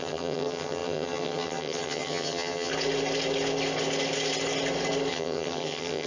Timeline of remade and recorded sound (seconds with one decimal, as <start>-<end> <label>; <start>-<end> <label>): 0.0-2.7 remade; 2.7-5.1 recorded; 5.1-6.1 remade